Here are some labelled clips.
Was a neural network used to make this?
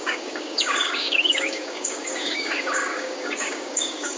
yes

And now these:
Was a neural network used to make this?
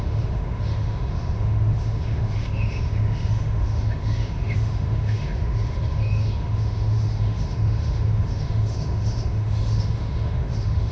yes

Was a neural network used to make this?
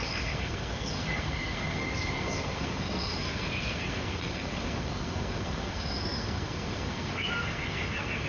yes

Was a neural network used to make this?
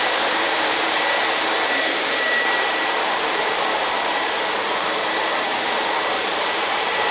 yes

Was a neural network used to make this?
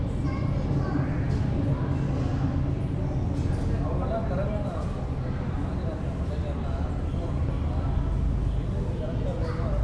no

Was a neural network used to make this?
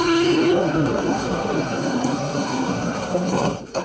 yes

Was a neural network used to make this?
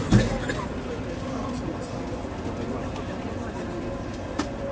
no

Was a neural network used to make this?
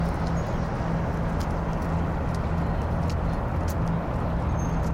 no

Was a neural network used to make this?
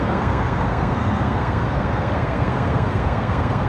yes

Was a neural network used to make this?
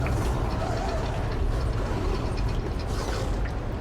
no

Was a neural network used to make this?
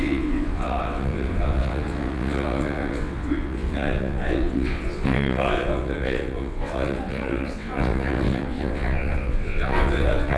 yes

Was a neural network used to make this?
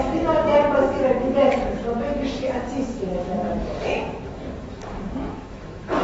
yes